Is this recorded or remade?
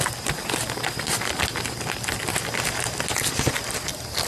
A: recorded